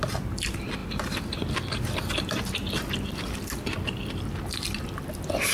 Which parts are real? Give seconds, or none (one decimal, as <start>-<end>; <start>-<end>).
0.0-5.5